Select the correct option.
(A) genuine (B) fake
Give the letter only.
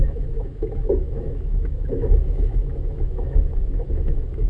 B